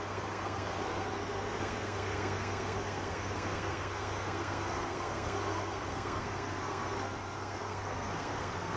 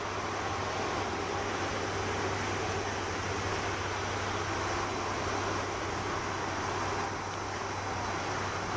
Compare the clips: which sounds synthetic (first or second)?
first